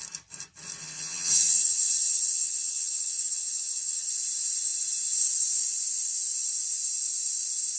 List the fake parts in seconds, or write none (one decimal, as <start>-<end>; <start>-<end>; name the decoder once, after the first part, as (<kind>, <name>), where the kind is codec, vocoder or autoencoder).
0.8-4.1 (vocoder, HiFi-GAN)